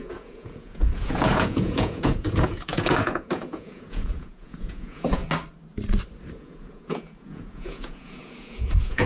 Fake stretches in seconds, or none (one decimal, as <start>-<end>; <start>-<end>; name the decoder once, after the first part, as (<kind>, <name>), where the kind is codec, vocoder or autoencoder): 0.0-5.2 (vocoder, Vocos); 6.3-9.1

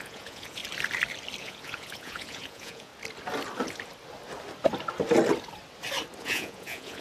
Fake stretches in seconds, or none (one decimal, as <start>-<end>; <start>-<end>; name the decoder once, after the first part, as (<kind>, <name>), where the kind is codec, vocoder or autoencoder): 0.0-0.6 (vocoder, Vocos); 1.4-2.9; 6.2-7.0

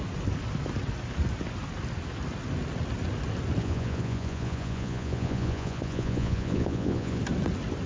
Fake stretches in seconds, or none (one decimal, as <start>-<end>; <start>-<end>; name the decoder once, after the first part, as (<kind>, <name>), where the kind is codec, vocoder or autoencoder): 3.6-7.2 (vocoder, Vocos)

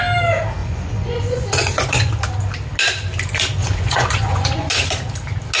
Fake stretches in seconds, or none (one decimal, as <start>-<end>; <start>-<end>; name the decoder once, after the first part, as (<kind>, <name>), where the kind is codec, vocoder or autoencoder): 0.6-2.1 (vocoder, Vocos); 3.6-4.7

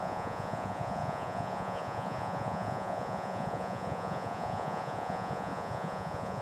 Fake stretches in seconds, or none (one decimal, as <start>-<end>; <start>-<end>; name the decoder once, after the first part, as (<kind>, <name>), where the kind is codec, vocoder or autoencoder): 0.0-6.4 (vocoder, Vocos)

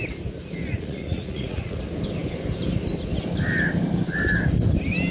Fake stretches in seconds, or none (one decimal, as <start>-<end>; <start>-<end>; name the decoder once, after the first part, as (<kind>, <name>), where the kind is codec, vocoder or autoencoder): 0.6-1.8 (vocoder, Vocos)

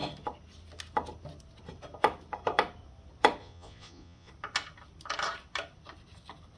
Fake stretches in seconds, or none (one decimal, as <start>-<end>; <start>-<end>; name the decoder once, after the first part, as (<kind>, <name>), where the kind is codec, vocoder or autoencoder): 3.4-4.3 (vocoder, Vocos)

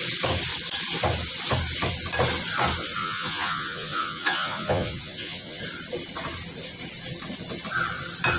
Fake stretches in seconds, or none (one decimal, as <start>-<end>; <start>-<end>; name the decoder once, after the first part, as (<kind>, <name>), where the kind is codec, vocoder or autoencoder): 3.0-5.6 (vocoder, Vocos)